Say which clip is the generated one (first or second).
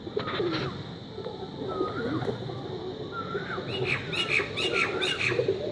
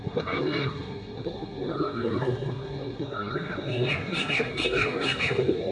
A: second